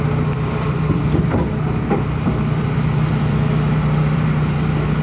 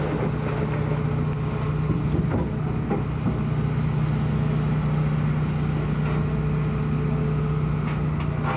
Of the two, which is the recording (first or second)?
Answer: second